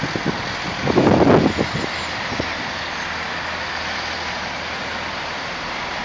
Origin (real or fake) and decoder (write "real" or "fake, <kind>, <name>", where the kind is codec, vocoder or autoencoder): real